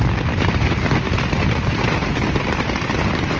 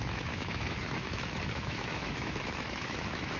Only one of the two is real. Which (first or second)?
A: first